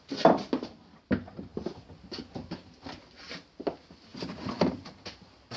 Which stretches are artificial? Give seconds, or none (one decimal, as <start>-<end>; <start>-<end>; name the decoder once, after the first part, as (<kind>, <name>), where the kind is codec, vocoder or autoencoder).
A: none